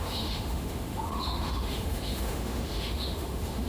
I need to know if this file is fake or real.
fake